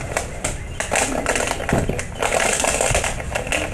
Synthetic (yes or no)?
no